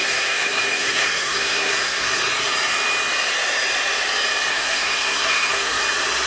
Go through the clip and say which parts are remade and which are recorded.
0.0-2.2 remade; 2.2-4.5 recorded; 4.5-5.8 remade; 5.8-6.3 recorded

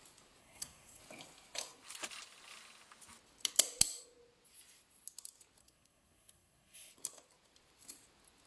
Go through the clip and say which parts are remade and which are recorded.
0.0-0.4 recorded; 0.4-1.0 remade; 1.0-5.6 recorded; 5.6-6.9 remade; 6.9-8.5 recorded

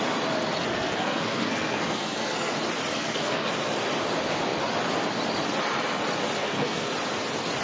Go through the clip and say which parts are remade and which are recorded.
0.0-0.7 recorded; 0.7-2.5 remade; 2.5-2.9 recorded; 2.9-3.5 remade; 3.5-6.4 recorded; 6.4-6.9 remade; 6.9-7.6 recorded

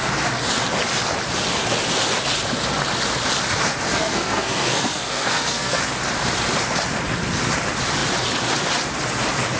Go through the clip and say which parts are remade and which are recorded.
0.0-3.9 recorded; 3.9-5.8 remade; 5.8-9.6 recorded